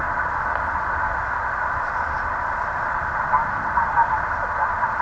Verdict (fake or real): real